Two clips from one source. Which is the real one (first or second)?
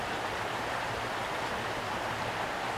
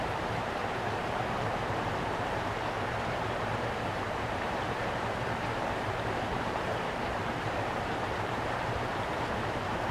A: first